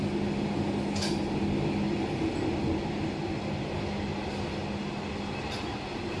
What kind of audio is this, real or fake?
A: real